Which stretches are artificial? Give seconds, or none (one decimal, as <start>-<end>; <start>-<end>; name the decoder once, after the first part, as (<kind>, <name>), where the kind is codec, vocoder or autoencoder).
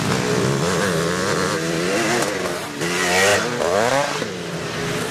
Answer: none